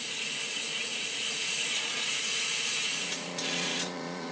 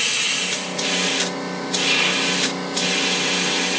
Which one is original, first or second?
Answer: second